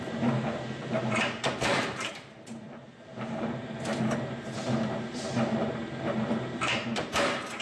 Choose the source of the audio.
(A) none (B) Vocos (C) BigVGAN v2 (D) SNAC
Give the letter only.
C